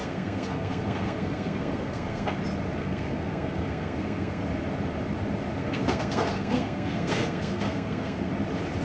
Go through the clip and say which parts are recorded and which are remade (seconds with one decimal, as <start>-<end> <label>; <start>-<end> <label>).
0.0-2.4 remade; 2.4-2.8 recorded; 2.8-4.4 remade; 4.4-5.6 recorded; 5.6-8.3 remade; 8.3-8.8 recorded